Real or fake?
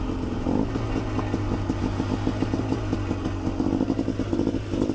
real